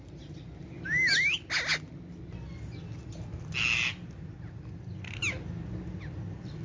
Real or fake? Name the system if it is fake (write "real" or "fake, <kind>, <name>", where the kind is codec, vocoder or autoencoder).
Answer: real